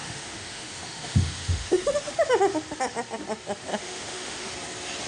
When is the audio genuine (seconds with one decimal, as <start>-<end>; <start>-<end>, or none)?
2.1-3.7; 4.5-5.1